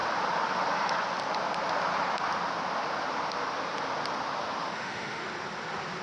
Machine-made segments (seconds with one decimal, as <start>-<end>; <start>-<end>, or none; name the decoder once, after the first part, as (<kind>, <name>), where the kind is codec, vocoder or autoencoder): 4.6-5.2 (autoencoder, DAC-VAE)